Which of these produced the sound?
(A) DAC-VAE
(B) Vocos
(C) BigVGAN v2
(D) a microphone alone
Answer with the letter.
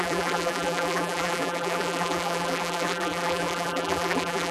C